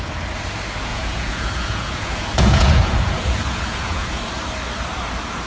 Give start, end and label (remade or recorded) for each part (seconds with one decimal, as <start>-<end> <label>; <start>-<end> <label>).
0.0-0.9 recorded; 0.9-4.2 remade; 4.2-5.5 recorded